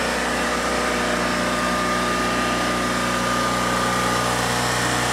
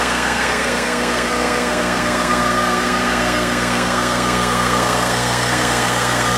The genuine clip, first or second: first